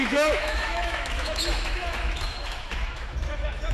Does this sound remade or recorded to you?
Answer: remade